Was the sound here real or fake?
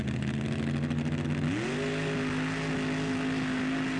real